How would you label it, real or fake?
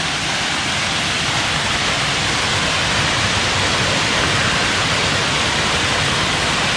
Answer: real